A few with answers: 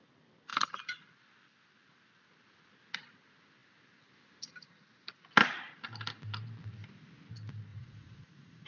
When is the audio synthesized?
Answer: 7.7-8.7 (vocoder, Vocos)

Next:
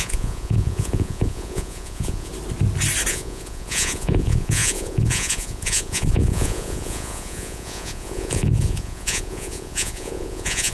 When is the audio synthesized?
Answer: 0.0-2.3 (vocoder, Vocos); 3.1-10.7

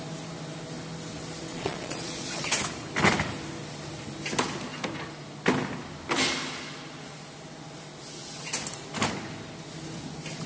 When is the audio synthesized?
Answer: 1.5-2.5 (vocoder, Vocos)

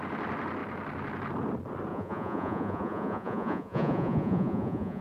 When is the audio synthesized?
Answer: 1.9-5.0 (vocoder, Vocos)